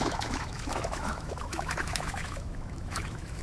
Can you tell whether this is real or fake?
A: fake